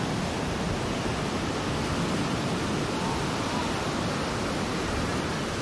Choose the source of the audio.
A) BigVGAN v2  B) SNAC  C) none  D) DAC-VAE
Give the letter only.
C